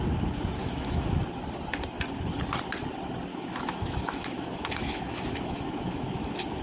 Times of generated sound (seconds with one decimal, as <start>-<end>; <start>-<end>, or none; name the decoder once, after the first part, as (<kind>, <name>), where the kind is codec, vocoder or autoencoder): 0.6-1.2 (autoencoder, DAC-VAE); 3.3-6.6